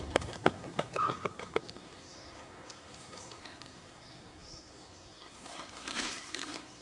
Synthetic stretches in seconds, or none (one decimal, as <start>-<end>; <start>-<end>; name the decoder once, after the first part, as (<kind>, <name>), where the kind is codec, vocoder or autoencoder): 0.0-6.8 (codec, SNAC)